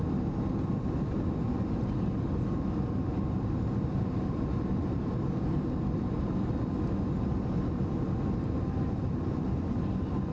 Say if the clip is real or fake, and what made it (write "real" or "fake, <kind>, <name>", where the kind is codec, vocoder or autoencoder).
real